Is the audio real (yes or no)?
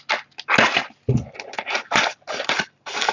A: yes